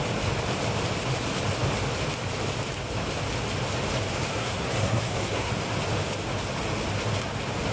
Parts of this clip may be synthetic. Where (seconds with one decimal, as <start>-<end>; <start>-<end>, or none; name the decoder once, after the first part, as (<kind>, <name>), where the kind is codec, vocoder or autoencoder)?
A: 4.3-5.5 (codec, SNAC)